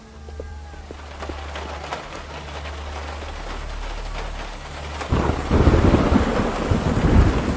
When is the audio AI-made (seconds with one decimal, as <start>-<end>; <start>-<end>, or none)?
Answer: 0.5-5.1; 6.3-6.9